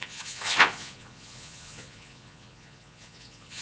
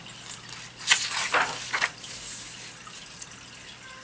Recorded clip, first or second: second